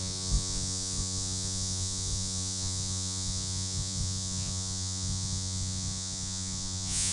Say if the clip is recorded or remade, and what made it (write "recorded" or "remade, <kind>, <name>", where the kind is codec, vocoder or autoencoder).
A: remade, vocoder, Vocos